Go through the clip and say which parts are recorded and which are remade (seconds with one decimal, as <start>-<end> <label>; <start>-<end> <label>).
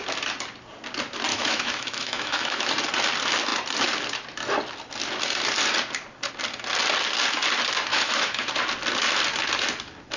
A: 0.0-1.3 recorded; 1.3-2.7 remade; 2.7-7.9 recorded; 7.9-8.5 remade; 8.5-10.2 recorded